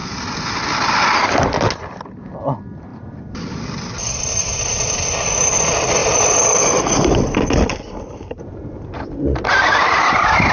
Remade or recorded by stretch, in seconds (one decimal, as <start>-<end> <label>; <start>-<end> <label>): 0.0-2.9 recorded; 2.9-5.0 remade; 5.0-6.0 recorded; 6.0-9.5 remade; 9.5-10.5 recorded